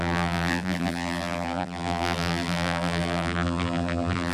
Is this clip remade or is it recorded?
remade